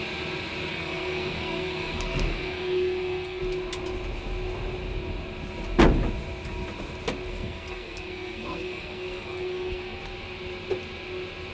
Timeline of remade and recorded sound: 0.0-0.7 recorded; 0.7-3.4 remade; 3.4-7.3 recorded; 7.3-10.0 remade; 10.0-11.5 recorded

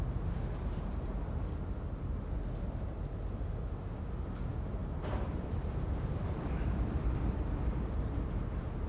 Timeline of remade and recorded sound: 0.0-4.8 recorded; 4.8-8.9 remade

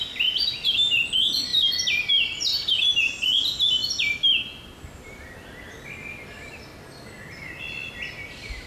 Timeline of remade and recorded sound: 0.0-8.7 recorded

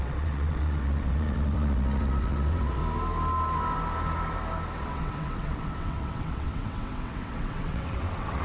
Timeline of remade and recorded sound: 0.0-2.8 remade; 2.8-4.8 recorded; 4.8-8.4 remade